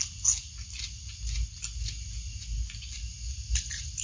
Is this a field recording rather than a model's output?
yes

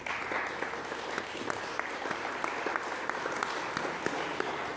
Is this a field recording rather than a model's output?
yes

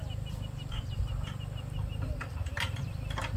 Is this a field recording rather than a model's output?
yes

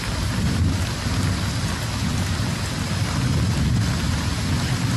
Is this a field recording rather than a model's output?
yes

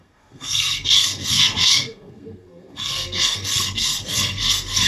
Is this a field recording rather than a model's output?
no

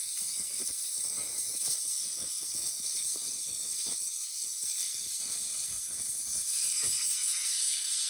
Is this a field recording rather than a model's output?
no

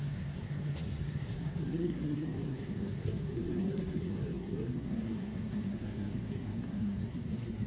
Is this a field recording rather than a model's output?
no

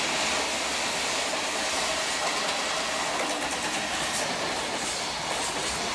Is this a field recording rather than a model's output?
yes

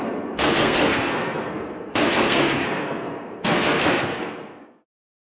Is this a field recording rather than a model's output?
no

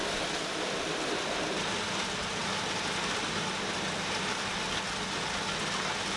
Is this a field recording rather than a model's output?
yes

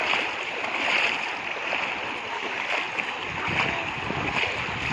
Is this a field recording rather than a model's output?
yes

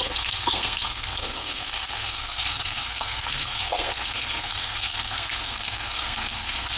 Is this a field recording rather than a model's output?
no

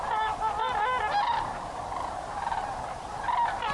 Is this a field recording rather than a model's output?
yes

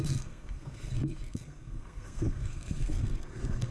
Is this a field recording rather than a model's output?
no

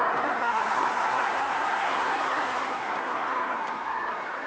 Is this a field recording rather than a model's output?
no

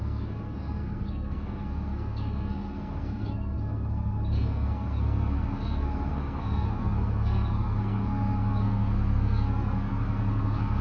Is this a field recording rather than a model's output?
no